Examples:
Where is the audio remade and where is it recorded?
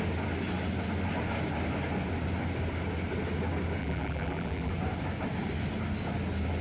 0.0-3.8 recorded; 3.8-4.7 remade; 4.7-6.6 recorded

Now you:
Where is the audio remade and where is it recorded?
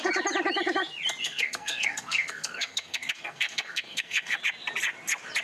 0.0-1.2 recorded; 1.2-4.4 remade; 4.4-5.4 recorded